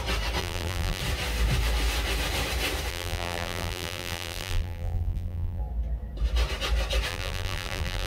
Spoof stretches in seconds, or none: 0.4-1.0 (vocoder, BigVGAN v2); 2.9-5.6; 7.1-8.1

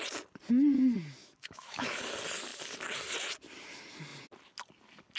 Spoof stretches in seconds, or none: 1.2-2.0 (autoencoder, DAC-VAE)

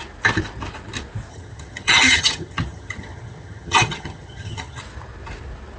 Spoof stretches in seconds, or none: 1.3-4.8 (vocoder, HiFi-GAN)

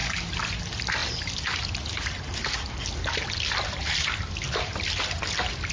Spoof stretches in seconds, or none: none

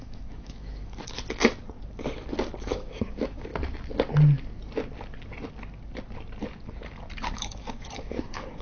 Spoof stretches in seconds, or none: 0.0-1.0 (autoencoder, DAC-VAE); 2.6-3.5; 7.3-8.6

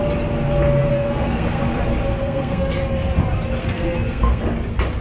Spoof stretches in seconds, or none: 0.9-1.6 (codec, SNAC); 2.2-2.8; 3.6-4.4